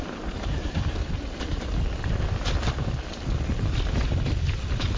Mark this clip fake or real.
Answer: fake